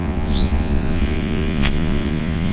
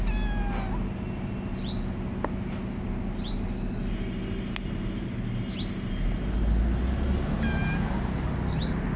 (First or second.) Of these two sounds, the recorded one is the second